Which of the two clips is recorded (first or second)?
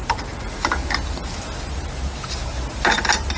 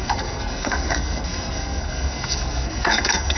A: first